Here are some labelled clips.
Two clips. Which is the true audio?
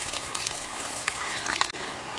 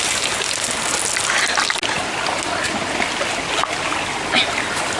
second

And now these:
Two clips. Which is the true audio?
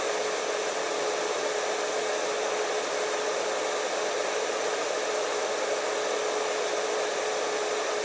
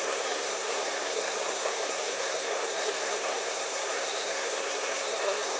first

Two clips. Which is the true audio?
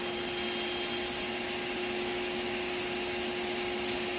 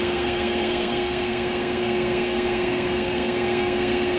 first